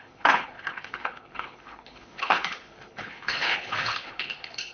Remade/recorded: remade